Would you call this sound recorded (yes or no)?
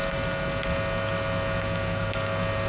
yes